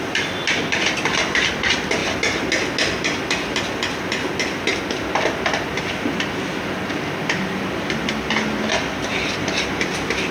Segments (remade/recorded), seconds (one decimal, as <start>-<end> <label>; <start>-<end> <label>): 0.0-10.3 recorded